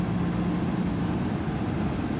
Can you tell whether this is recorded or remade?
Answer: recorded